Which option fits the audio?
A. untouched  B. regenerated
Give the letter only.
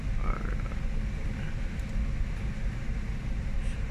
A